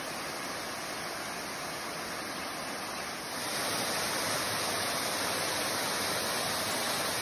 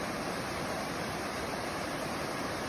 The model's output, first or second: second